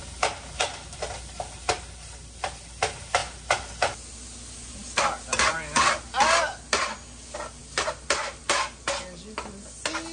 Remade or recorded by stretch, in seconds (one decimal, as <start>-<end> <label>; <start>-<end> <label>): 0.0-10.1 recorded